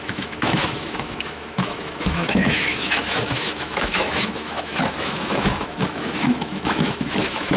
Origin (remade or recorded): remade